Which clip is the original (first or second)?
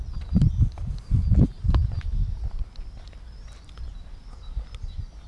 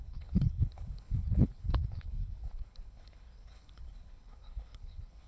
first